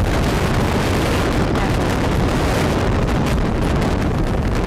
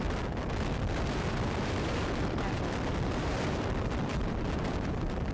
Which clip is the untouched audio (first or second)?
first